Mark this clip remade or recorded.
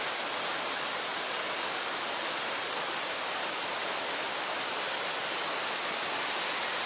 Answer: recorded